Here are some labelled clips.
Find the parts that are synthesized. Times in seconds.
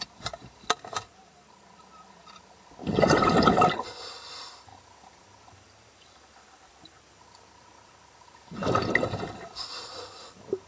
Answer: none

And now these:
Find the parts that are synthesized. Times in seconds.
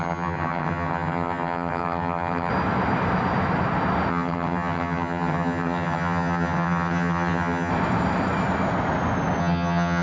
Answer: 0.0-2.5 (vocoder, HiFi-GAN); 4.1-7.7; 9.4-10.0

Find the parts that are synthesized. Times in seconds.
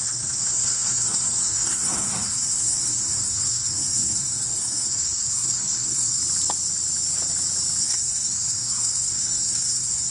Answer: 0.0-6.2 (codec, SNAC); 7.8-10.1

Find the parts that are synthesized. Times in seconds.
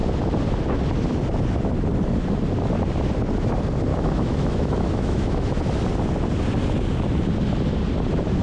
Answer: 3.9-5.6 (autoencoder, DAC-VAE)